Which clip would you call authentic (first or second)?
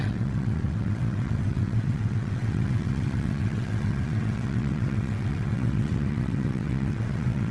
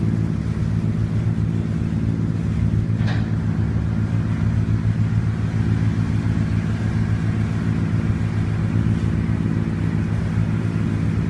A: second